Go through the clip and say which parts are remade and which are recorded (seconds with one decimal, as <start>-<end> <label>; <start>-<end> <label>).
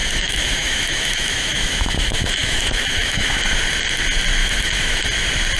0.0-3.4 remade; 3.4-4.4 recorded; 4.4-5.0 remade; 5.0-5.6 recorded